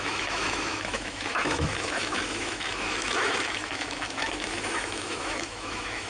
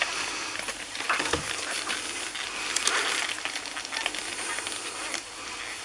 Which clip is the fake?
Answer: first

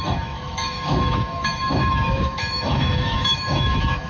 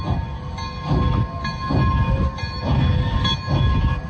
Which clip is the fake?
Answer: first